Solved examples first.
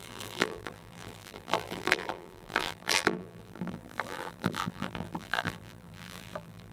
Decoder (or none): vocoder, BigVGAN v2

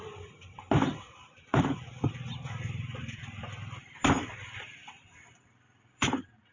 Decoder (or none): vocoder, BigVGAN v2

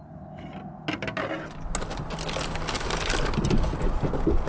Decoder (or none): none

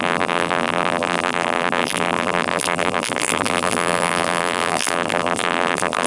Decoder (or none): vocoder, BigVGAN v2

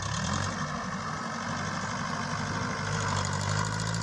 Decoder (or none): none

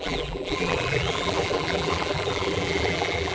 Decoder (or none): vocoder, BigVGAN v2